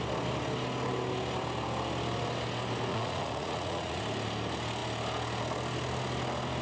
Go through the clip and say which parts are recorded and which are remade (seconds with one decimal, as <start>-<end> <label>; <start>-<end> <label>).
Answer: 0.0-2.9 recorded; 2.9-4.0 remade; 4.0-6.6 recorded